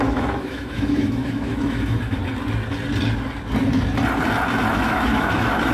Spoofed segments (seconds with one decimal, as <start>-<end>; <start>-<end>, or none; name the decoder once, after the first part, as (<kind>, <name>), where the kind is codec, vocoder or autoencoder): 0.0-2.2 (autoencoder, DAC-VAE); 4.7-5.7